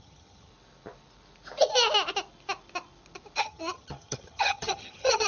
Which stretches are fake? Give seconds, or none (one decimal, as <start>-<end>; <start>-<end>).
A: 0.0-0.5; 3.4-5.3